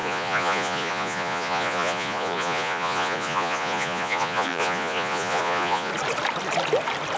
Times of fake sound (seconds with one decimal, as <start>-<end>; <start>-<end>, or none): 0.0-5.9